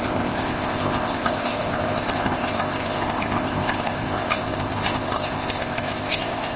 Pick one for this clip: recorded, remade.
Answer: remade